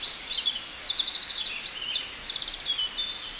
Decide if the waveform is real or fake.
real